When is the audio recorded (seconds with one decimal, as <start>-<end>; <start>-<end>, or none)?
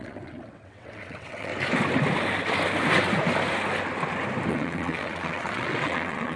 1.5-4.5